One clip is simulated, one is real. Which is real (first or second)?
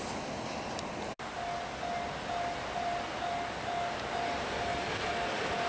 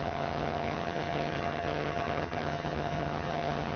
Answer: first